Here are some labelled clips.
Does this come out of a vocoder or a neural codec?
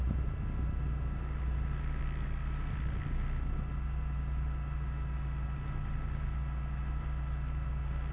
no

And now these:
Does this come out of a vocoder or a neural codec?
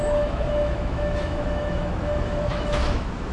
yes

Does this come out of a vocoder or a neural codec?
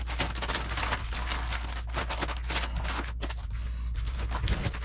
no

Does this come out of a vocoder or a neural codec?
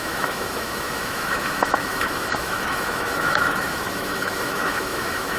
yes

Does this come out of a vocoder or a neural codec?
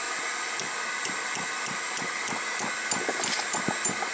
no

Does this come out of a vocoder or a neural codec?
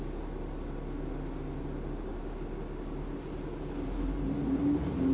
no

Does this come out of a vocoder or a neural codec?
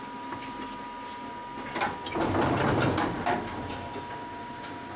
no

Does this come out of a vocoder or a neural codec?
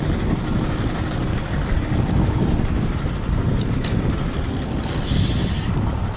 no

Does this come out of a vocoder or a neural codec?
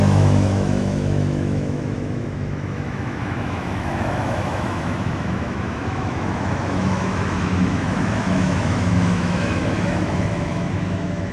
yes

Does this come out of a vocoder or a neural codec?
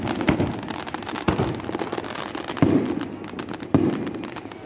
no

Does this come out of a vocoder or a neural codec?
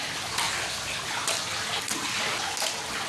no